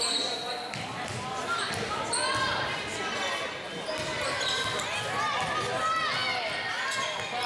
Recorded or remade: recorded